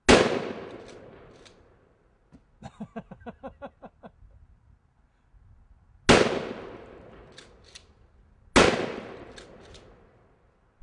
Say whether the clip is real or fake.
real